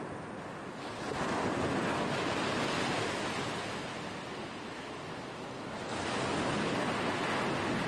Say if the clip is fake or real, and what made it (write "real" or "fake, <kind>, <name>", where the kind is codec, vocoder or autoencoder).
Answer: real